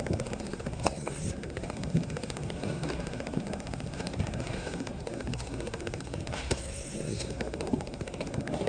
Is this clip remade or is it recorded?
remade